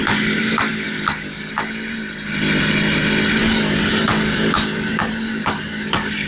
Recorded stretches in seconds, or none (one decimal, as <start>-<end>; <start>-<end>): 1.5-3.4